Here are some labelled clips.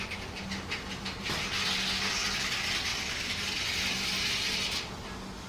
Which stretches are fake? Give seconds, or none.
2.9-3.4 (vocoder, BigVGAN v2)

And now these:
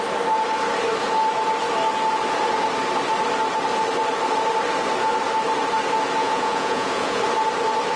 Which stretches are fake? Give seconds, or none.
6.2-7.2 (vocoder, Vocos)

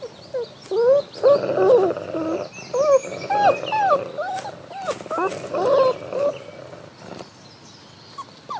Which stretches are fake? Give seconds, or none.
none

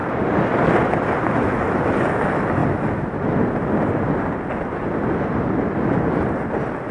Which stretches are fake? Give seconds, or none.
none